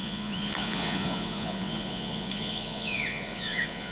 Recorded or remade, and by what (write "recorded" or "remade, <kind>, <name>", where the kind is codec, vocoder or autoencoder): remade, vocoder, Vocos